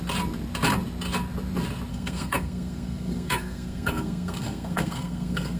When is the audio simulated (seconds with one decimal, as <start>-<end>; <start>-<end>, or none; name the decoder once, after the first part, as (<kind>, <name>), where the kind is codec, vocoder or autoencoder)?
1.9-5.6 (codec, SNAC)